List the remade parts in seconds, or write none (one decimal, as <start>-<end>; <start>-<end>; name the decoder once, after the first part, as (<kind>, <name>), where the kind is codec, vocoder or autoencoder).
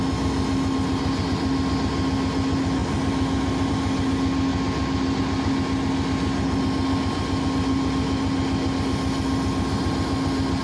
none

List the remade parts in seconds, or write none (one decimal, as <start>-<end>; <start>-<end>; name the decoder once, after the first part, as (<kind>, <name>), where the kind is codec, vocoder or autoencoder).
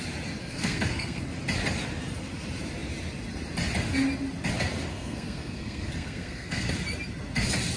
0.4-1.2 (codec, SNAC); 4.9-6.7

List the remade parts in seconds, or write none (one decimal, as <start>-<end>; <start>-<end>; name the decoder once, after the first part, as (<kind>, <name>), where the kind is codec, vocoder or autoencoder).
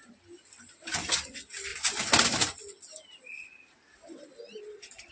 none